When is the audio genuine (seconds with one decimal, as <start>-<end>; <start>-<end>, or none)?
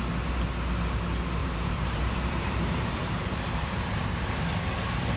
0.0-1.4; 4.2-5.2